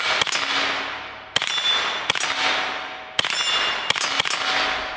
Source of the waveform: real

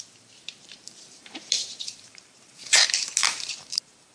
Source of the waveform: fake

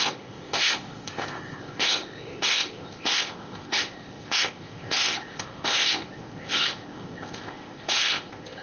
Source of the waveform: fake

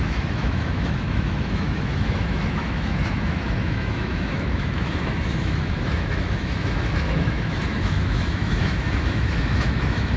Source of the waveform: fake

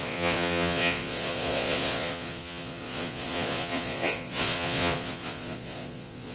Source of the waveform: fake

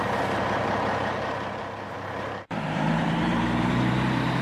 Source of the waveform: fake